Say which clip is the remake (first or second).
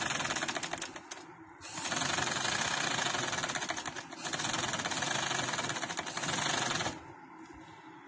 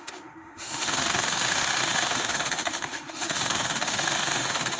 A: second